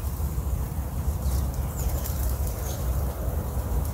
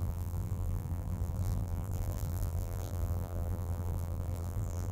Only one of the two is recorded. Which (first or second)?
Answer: first